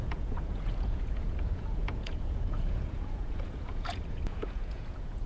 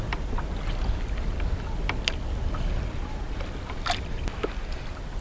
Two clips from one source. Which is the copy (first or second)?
first